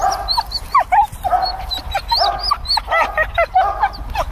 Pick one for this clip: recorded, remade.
recorded